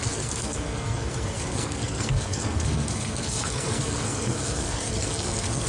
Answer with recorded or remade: remade